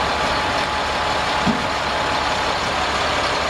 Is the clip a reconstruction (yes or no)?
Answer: no